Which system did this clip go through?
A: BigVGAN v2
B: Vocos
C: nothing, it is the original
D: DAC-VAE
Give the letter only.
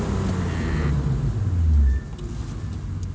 C